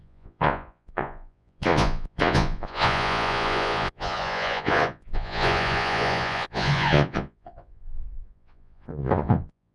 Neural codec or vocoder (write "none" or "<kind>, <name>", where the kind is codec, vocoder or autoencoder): vocoder, Vocos